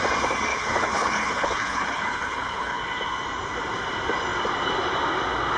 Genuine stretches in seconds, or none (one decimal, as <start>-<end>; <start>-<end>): 0.0-0.5; 2.8-5.6